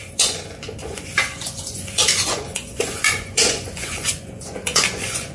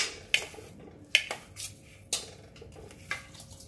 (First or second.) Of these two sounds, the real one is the second